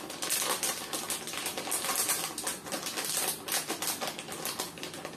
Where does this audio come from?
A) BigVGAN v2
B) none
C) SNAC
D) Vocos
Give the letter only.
B